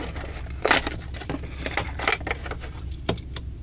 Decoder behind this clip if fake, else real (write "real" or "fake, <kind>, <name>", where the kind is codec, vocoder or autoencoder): real